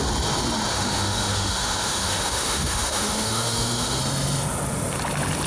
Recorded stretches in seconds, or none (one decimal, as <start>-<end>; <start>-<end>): 0.0-0.7; 4.0-5.5